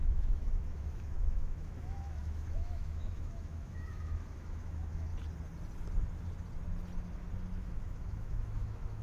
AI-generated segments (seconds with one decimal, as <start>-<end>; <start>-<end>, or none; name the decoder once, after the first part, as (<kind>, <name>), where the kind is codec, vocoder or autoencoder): 0.0-5.1 (autoencoder, DAC-VAE); 7.6-9.0